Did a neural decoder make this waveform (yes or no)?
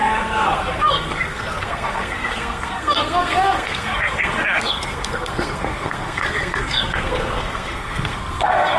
yes